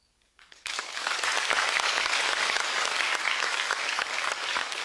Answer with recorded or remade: remade